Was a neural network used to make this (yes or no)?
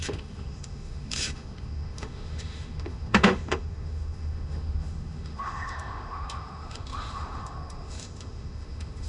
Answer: yes